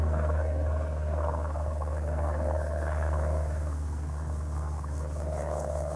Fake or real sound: fake